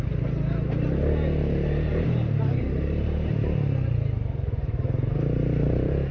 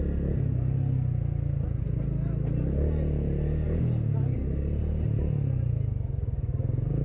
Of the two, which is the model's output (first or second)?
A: first